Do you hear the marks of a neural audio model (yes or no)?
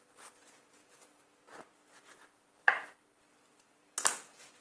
no